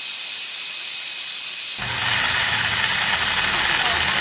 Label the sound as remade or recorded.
recorded